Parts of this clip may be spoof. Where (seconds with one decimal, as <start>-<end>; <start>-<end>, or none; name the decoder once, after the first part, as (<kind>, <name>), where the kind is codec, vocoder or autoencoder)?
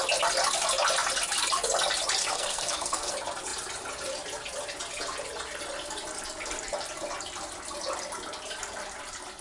2.2-3.1 (codec, SNAC)